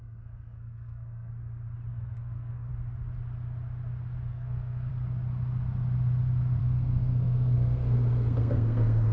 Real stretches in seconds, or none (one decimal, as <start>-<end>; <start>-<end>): 1.3-1.9; 2.7-4.3; 4.9-6.6